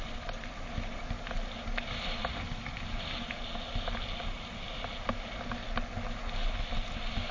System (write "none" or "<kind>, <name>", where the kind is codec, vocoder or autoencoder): none